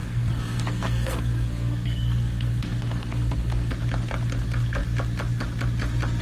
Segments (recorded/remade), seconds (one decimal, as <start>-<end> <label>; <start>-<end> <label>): 0.0-3.7 remade; 3.7-6.2 recorded